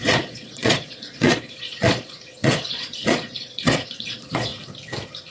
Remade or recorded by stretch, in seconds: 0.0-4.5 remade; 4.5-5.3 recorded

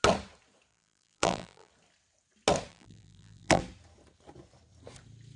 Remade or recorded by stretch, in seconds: 0.0-0.7 recorded; 0.7-1.7 remade; 1.7-2.7 recorded; 2.7-3.6 remade; 3.6-5.4 recorded

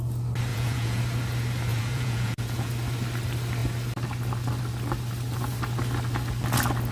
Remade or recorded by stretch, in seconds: 0.0-0.5 recorded; 0.5-1.0 remade; 1.0-1.7 recorded; 1.7-2.7 remade; 2.7-6.9 recorded

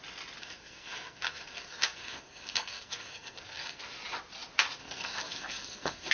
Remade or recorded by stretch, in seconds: 0.0-0.4 recorded; 0.4-3.8 remade; 3.8-4.8 recorded; 4.8-6.1 remade

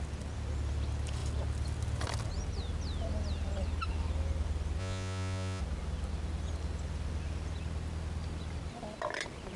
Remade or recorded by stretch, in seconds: 0.0-4.8 recorded; 4.8-5.6 remade; 5.6-9.6 recorded

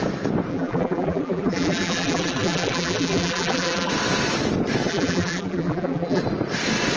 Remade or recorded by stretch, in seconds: 0.0-0.5 recorded; 0.5-3.9 remade; 3.9-4.9 recorded; 4.9-6.2 remade; 6.2-7.0 recorded

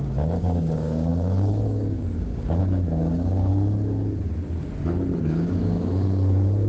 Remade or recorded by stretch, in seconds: 0.0-3.5 remade; 3.5-5.2 recorded; 5.2-6.7 remade

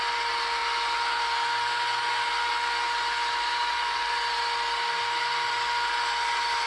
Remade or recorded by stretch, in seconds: 0.0-6.7 recorded